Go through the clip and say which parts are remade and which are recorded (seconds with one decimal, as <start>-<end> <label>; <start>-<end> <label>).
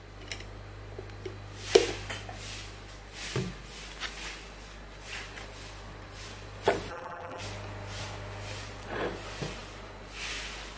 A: 0.0-6.9 recorded; 6.9-7.4 remade; 7.4-10.8 recorded